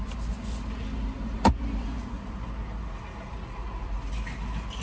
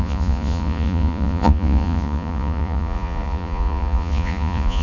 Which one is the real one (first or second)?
first